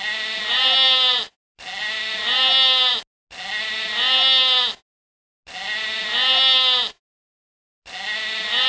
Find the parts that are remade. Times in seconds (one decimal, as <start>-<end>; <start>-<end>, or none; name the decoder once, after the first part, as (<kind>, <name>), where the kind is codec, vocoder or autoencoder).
none